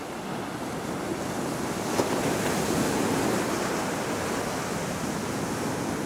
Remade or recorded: recorded